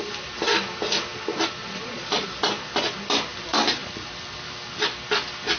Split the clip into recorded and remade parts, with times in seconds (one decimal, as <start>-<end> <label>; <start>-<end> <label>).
0.0-1.6 recorded; 1.6-2.3 remade; 2.3-5.6 recorded